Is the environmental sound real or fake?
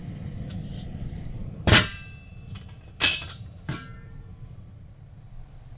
fake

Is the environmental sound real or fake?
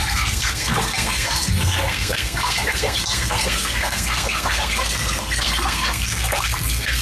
fake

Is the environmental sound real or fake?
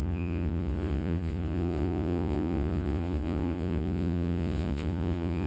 fake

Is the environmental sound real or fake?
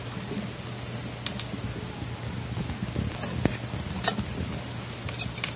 real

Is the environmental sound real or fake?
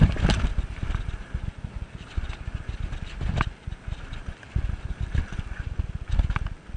real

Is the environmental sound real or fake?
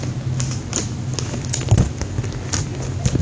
real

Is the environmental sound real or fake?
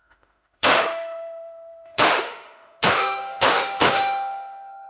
fake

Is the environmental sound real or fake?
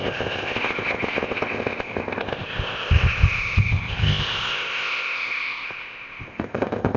fake